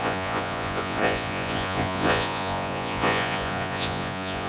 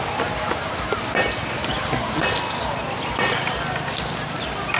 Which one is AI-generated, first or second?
first